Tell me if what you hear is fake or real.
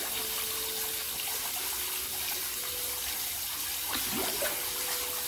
real